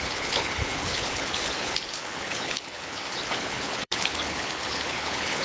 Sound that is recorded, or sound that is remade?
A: remade